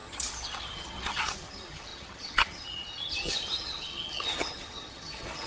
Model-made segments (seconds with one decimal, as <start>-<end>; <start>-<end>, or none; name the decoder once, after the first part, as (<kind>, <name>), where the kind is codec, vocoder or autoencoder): 0.0-5.5 (vocoder, HiFi-GAN)